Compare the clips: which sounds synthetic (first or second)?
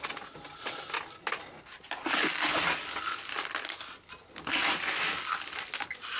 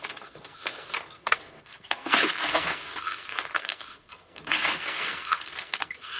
second